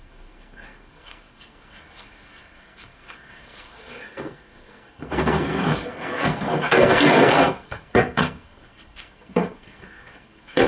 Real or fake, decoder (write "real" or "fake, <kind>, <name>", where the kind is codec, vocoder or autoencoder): fake, codec, SNAC